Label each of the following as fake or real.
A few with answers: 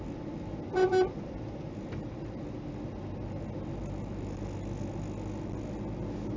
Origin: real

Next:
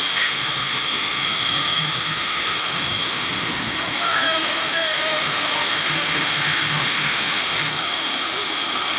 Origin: fake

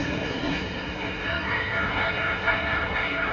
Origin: fake